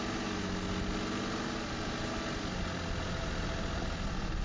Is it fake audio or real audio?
real